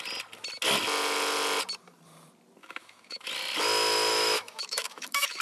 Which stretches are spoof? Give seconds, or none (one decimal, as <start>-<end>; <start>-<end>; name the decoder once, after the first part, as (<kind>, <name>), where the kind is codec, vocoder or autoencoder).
2.6-3.3 (autoencoder, DAC-VAE); 4.1-5.4